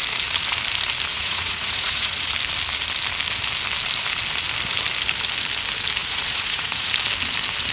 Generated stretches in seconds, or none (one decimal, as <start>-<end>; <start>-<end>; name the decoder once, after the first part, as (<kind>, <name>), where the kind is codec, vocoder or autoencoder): 1.1-2.3 (vocoder, Vocos); 6.0-6.9